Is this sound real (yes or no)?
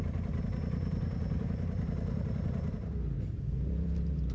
no